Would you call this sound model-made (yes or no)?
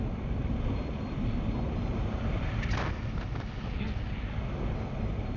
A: no